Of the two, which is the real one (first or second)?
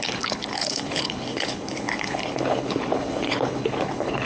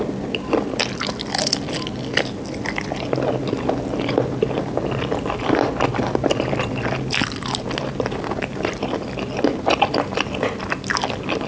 second